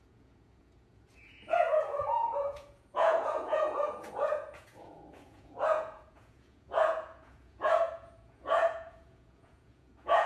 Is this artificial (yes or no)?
yes